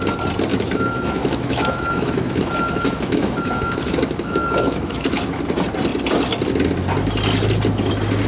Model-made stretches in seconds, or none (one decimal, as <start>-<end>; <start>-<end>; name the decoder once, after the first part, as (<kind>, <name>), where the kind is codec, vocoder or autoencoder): 0.5-5.4 (autoencoder, DAC-VAE)